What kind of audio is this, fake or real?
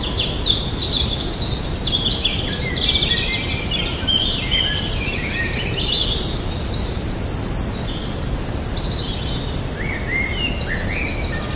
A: real